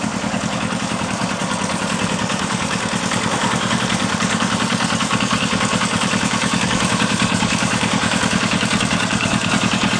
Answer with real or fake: fake